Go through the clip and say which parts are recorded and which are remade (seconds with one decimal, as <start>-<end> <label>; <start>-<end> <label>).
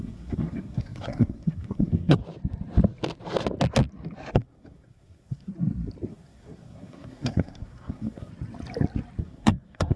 0.0-2.2 remade; 2.2-4.3 recorded; 4.3-5.5 remade; 5.5-6.1 recorded; 6.1-8.3 remade; 8.3-9.2 recorded; 9.2-10.0 remade